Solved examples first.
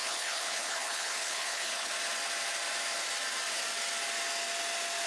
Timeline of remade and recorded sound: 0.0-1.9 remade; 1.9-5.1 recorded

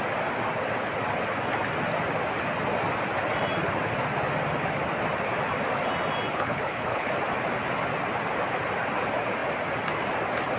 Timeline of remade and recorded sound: 0.0-6.3 recorded; 6.3-7.1 remade; 7.1-10.6 recorded

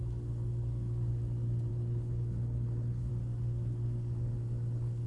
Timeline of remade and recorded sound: 0.0-1.7 recorded; 1.7-3.1 remade; 3.1-5.1 recorded

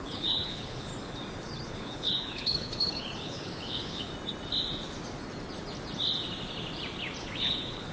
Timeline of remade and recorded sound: 0.0-0.9 remade; 0.9-1.7 recorded; 1.7-4.1 remade; 4.1-7.2 recorded; 7.2-7.9 remade

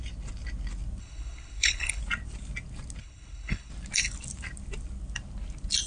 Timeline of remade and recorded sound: 0.0-1.0 recorded; 1.0-2.0 remade; 2.0-3.0 recorded; 3.0-3.7 remade; 3.7-5.9 recorded